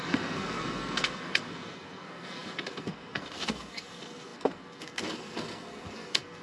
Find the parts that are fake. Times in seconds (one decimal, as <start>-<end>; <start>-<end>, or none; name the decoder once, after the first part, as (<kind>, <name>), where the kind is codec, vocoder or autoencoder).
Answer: 0.0-6.4 (codec, SNAC)